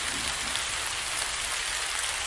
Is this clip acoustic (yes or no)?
yes